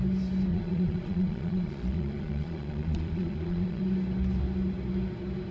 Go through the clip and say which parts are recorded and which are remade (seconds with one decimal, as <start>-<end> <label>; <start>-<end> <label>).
0.0-0.5 recorded; 0.5-3.8 remade; 3.8-5.5 recorded